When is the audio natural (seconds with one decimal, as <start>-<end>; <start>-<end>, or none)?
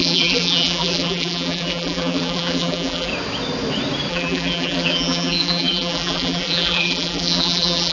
3.1-4.1